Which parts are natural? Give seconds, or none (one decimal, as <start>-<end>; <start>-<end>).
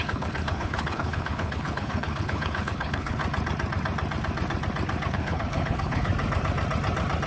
3.2-5.1; 6.1-7.3